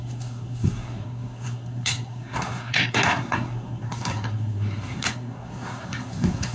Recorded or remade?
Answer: remade